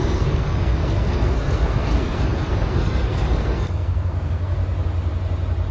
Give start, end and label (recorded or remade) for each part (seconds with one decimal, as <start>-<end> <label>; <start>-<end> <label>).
0.0-4.6 remade; 4.6-5.7 recorded